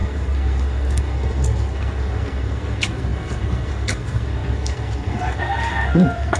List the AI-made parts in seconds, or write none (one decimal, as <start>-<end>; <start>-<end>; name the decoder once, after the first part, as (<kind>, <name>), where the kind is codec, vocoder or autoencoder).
0.0-6.4 (codec, SNAC)